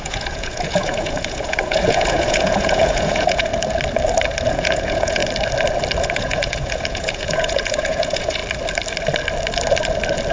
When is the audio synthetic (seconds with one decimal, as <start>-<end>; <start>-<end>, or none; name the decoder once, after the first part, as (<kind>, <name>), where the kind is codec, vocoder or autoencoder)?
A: 0.0-3.5 (vocoder, Vocos); 4.5-5.2; 6.0-8.4